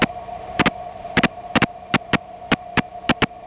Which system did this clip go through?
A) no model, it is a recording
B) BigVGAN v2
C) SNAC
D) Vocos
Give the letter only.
B